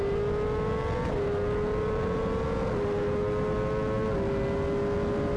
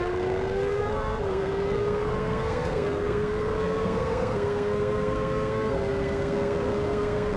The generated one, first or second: second